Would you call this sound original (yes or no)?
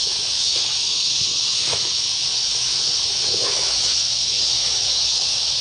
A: no